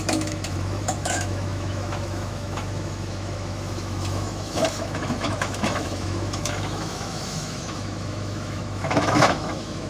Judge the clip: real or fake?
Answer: fake